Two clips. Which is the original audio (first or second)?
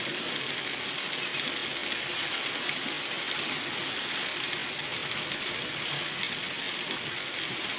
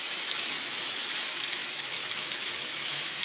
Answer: first